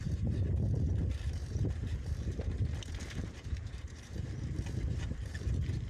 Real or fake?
fake